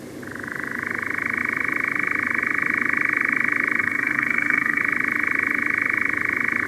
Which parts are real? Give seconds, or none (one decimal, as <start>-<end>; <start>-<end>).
0.0-3.8; 4.8-6.7